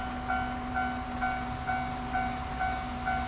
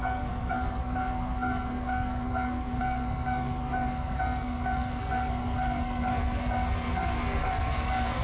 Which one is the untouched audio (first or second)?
first